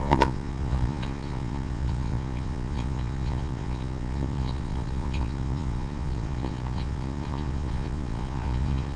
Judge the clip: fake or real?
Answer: fake